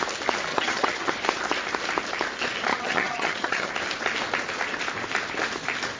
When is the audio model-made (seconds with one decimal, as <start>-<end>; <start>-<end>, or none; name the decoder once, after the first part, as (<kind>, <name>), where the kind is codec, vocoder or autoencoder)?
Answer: 0.5-1.1 (vocoder, HiFi-GAN); 2.7-3.7